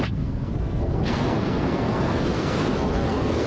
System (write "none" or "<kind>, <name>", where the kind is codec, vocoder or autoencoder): codec, SNAC